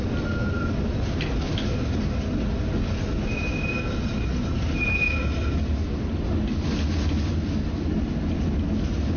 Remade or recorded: recorded